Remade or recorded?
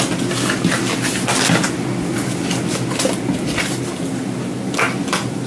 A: recorded